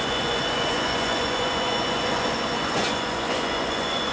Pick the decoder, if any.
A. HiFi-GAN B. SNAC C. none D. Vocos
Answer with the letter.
D